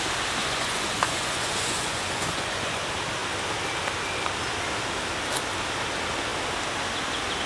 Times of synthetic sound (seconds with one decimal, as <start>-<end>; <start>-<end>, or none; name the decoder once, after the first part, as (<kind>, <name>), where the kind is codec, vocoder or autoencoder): 0.4-2.8 (vocoder, Vocos)